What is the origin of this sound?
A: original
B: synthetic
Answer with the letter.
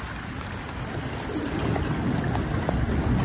A